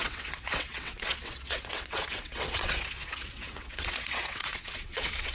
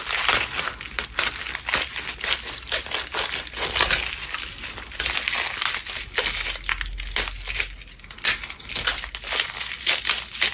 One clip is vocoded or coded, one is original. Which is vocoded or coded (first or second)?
first